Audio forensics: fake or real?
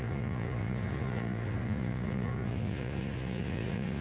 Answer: fake